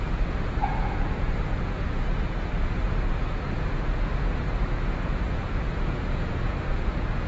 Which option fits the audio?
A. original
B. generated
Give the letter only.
B